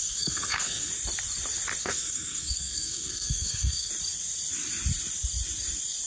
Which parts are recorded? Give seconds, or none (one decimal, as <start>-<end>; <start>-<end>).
0.9-1.8; 3.9-6.1